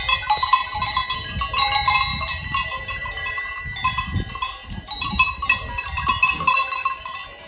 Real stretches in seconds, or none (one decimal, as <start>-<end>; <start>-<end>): 0.0-2.1; 3.4-4.6